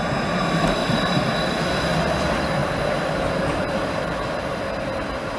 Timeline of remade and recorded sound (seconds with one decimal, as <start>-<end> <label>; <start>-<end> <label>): 0.0-0.8 recorded; 0.8-1.7 remade; 1.7-2.6 recorded; 2.6-5.4 remade